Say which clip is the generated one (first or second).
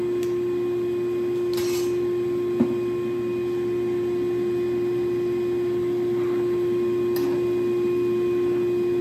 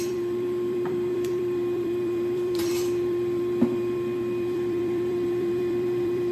second